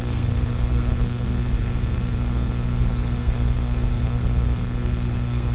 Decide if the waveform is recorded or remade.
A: remade